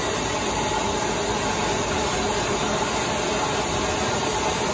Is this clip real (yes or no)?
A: yes